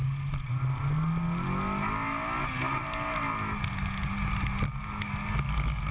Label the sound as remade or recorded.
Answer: recorded